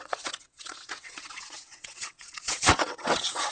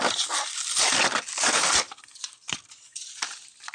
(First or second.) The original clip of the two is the second